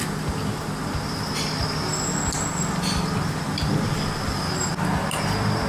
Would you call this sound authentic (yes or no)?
yes